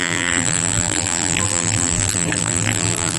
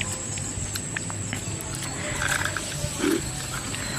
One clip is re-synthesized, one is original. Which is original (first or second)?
second